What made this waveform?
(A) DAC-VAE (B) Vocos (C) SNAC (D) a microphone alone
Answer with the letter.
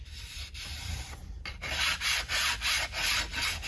D